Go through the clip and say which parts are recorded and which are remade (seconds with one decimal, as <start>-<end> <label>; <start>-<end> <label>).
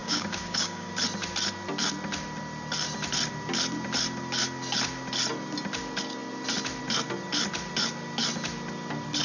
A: 0.0-0.9 remade; 0.9-9.2 recorded